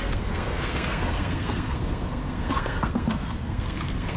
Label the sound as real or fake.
fake